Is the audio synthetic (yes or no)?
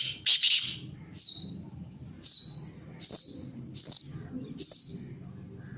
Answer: no